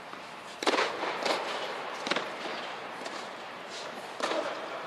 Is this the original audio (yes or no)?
no